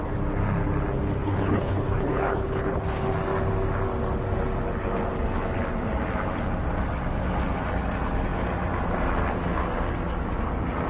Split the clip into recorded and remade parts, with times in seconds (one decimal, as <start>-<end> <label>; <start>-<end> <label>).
0.0-1.2 recorded; 1.2-2.8 remade; 2.8-10.9 recorded